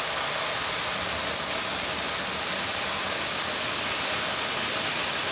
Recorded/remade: recorded